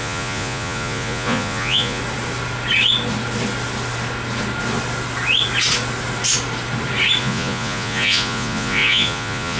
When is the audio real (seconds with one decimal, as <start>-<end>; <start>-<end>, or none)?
2.0-7.2